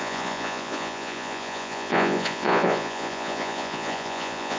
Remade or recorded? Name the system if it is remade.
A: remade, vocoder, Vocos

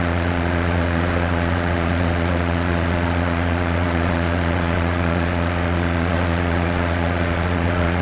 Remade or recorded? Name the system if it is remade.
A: remade, vocoder, Vocos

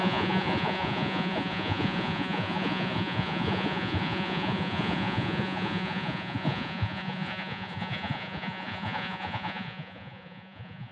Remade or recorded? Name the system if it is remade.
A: remade, vocoder, Vocos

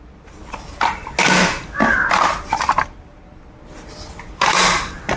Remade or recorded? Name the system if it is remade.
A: recorded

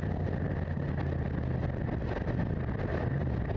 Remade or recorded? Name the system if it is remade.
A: recorded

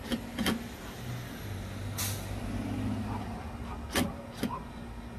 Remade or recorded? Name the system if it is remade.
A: recorded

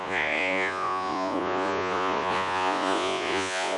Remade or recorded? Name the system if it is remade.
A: remade, vocoder, Vocos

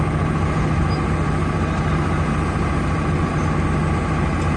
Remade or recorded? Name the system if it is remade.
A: recorded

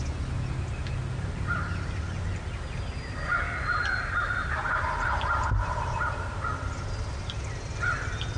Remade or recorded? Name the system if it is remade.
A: recorded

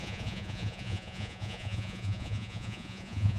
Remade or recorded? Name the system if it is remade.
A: remade, vocoder, Vocos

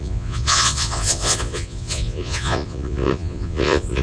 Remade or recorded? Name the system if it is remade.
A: remade, vocoder, Vocos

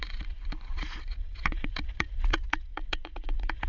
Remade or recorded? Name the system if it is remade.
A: remade, vocoder, Vocos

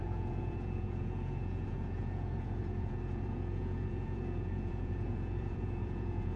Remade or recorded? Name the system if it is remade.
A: remade, vocoder, Vocos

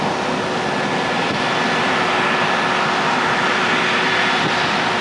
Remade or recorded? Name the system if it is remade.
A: recorded